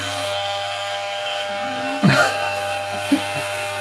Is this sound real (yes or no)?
no